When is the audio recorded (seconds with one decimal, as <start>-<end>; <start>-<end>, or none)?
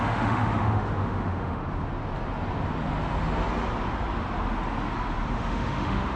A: 1.6-5.3